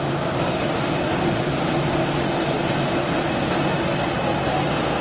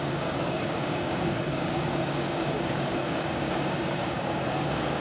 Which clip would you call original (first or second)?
first